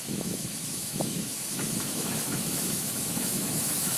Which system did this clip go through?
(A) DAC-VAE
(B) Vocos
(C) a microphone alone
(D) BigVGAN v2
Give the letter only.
A